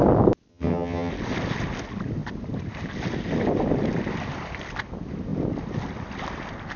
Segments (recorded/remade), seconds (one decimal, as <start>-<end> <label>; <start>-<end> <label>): 0.0-0.5 recorded; 0.5-1.1 remade; 1.1-6.8 recorded